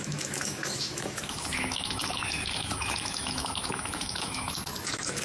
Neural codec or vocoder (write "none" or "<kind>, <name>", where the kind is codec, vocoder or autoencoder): autoencoder, DAC-VAE